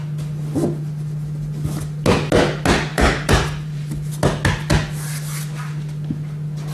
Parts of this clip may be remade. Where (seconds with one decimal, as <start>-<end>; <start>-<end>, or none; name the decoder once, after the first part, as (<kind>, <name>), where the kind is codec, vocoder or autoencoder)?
2.9-4.1 (vocoder, BigVGAN v2)